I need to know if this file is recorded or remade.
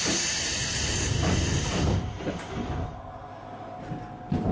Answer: recorded